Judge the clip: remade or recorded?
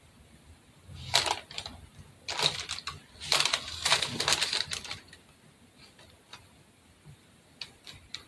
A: recorded